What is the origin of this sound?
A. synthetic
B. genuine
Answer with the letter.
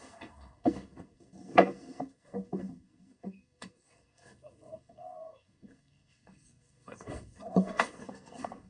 A